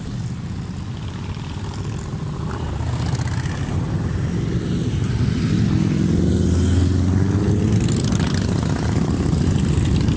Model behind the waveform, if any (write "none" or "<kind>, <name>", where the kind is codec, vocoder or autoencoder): none